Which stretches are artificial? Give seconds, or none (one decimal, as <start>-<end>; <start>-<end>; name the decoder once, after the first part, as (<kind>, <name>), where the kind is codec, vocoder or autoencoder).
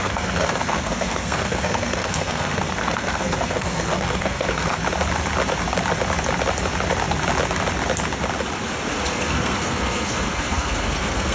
0.0-4.8 (codec, SNAC); 9.1-11.3